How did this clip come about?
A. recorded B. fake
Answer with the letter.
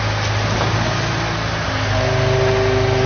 A